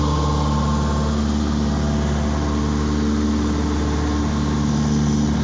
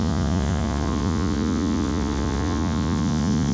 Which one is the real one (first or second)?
first